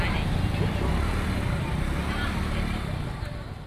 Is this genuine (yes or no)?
yes